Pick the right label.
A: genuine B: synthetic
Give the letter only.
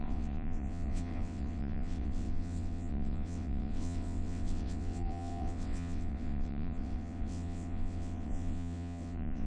B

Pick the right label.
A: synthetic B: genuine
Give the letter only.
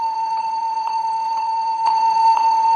A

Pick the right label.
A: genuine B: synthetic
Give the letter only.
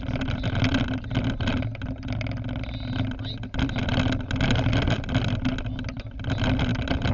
A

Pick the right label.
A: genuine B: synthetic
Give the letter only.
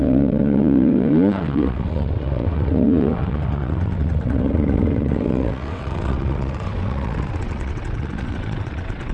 B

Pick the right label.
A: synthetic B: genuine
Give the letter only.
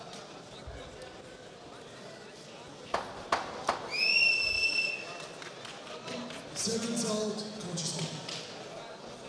B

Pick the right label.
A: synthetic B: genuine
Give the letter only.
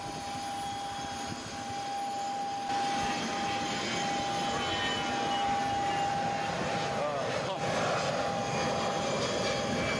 B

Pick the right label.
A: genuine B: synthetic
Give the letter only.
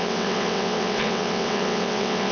B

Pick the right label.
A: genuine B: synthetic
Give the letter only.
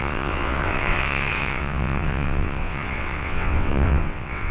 B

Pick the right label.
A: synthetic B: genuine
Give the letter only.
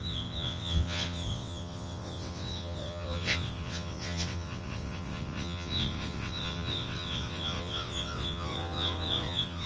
A